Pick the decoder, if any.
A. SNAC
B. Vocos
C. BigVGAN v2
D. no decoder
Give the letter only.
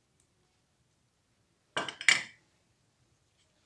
D